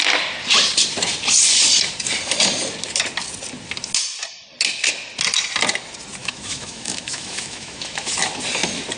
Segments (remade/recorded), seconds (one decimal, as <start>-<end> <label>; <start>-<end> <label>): 0.0-6.2 recorded; 6.2-8.1 remade; 8.1-9.0 recorded